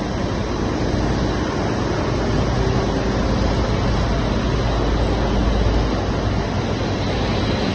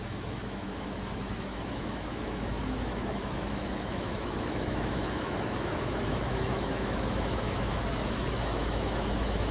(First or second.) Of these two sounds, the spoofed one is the second